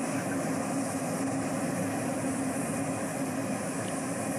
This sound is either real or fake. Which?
real